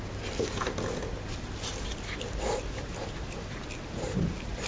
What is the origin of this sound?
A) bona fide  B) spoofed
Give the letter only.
A